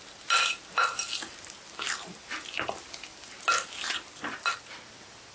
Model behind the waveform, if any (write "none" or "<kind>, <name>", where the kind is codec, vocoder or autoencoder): none